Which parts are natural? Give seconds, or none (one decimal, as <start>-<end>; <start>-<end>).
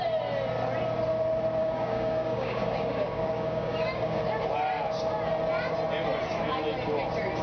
0.0-1.6; 4.2-7.4